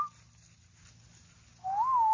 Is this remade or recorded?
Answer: recorded